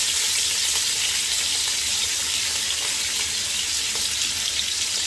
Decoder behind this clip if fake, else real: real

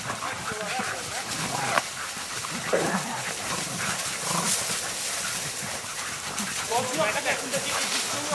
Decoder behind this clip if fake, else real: real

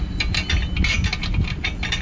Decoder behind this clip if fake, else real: real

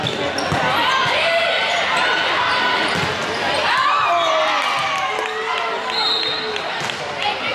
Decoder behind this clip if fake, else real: real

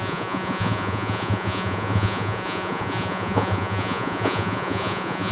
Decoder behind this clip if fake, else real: fake, vocoder, Vocos